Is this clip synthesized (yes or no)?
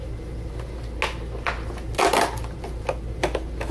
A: no